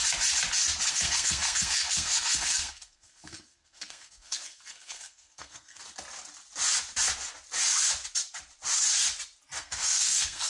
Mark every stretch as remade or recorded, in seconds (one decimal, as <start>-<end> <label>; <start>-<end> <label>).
0.0-0.9 recorded; 0.9-5.8 remade; 5.8-9.6 recorded; 9.6-10.5 remade